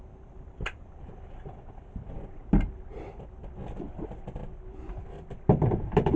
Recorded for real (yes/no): no